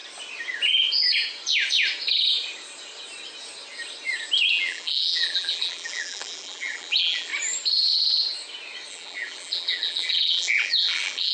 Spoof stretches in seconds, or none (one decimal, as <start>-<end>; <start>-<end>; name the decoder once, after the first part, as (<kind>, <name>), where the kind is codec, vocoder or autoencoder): 4.5-7.3 (vocoder, BigVGAN v2); 8.9-11.3